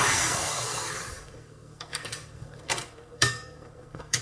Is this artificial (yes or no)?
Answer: yes